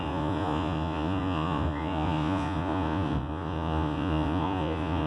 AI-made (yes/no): yes